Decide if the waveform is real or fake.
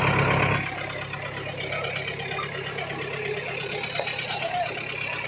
real